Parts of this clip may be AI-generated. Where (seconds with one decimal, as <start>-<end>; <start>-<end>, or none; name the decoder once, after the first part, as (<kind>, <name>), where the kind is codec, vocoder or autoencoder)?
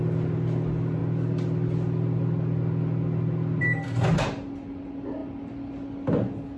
none